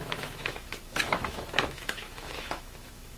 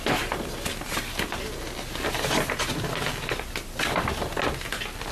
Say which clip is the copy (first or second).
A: first